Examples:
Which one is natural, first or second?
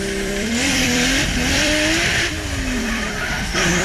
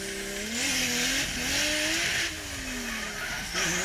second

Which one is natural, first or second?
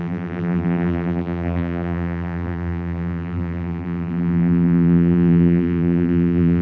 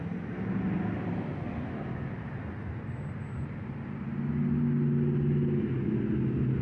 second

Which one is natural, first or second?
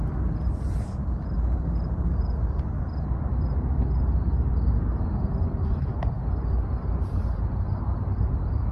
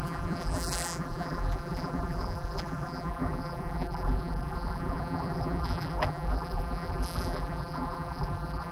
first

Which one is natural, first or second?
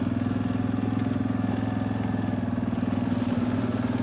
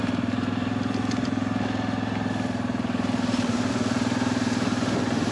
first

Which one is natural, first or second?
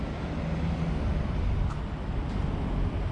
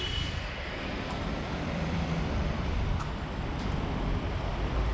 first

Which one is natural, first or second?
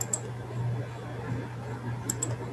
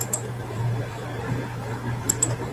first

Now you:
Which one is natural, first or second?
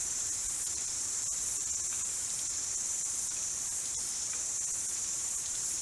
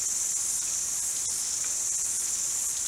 second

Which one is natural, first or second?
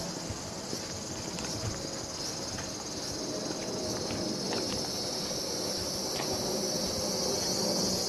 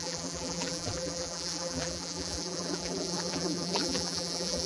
first